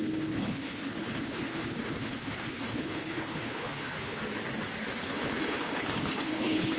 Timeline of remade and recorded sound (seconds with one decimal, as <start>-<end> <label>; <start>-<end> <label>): 0.0-4.2 remade; 4.2-5.0 recorded; 5.0-6.8 remade